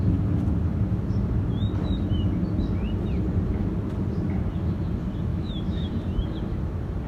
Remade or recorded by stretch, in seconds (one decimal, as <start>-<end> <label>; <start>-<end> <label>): 0.0-5.3 recorded; 5.3-5.9 remade; 5.9-7.1 recorded